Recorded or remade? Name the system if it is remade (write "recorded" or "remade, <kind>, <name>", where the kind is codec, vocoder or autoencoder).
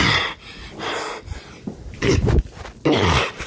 recorded